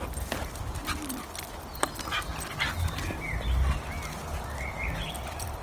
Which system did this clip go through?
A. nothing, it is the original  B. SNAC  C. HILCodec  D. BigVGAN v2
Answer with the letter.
A